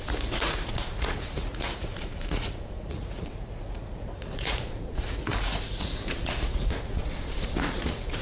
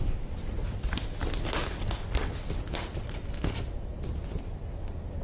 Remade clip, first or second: first